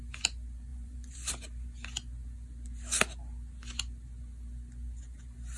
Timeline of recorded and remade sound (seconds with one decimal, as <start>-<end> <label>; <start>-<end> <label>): 0.0-0.7 recorded; 0.7-1.3 remade; 1.3-5.6 recorded